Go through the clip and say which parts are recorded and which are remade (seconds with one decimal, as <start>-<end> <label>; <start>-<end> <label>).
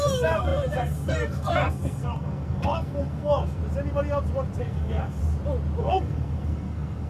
0.0-3.6 remade; 3.6-4.6 recorded; 4.6-5.2 remade; 5.2-5.8 recorded; 5.8-7.1 remade